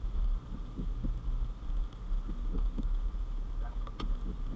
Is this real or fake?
real